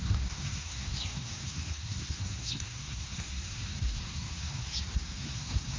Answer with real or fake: fake